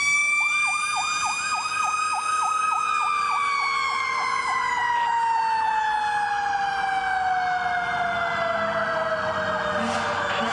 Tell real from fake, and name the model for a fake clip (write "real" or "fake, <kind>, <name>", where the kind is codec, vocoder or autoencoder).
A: real